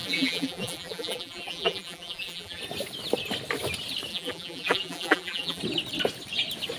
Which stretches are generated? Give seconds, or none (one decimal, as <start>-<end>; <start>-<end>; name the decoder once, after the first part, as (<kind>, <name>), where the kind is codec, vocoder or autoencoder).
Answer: 0.0-2.6 (vocoder, BigVGAN v2); 4.1-5.6